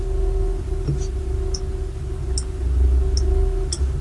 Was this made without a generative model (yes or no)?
yes